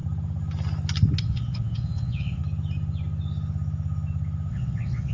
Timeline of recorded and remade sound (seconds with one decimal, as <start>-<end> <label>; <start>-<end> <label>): 0.0-1.2 recorded; 1.2-2.4 remade; 2.4-4.5 recorded; 4.5-5.1 remade